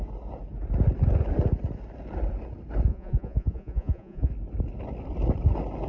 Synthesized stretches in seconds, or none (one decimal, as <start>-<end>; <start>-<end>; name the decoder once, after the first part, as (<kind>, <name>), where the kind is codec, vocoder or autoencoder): 2.9-4.3 (vocoder, Vocos)